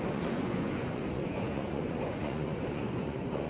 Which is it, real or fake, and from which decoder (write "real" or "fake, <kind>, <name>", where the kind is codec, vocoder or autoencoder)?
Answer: fake, vocoder, Vocos